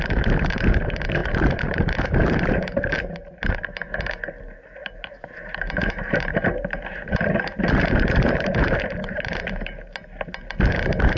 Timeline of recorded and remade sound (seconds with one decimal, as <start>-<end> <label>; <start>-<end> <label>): 0.0-1.2 recorded; 1.2-2.9 remade; 2.9-4.8 recorded; 4.8-9.5 remade; 9.5-11.2 recorded